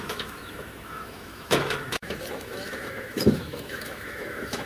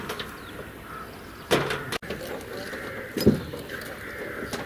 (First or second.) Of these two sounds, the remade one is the first